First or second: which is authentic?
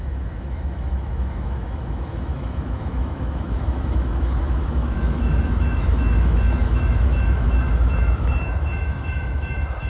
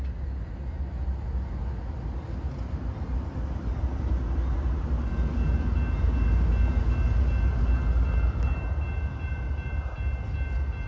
second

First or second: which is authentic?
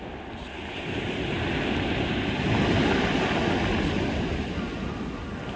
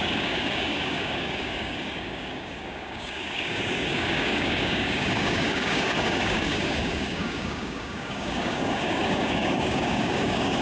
first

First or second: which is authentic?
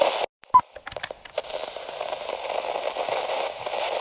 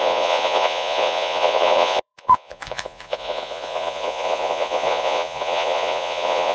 first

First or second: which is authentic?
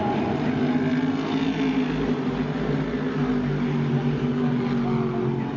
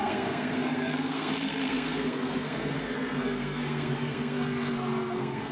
first